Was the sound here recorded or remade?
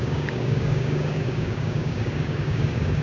remade